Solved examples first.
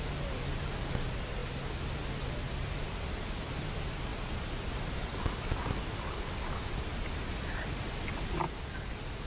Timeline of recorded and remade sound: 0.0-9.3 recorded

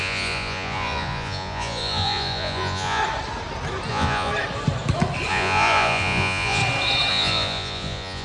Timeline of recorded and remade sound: 0.0-3.0 remade; 3.0-3.9 recorded; 3.9-4.3 remade; 4.3-5.3 recorded; 5.3-6.6 remade; 6.6-7.1 recorded; 7.1-8.2 remade

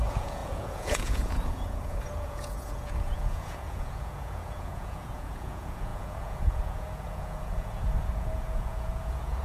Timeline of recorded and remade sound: 0.0-9.4 remade

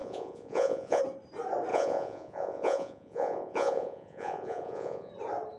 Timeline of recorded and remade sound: 0.0-1.0 remade; 1.0-1.7 recorded; 1.7-5.1 remade; 5.1-5.6 recorded